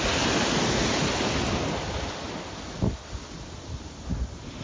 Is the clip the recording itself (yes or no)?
yes